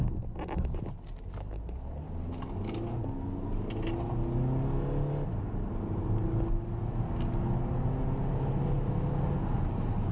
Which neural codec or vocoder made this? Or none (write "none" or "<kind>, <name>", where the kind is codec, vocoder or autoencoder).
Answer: none